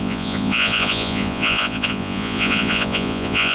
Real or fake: fake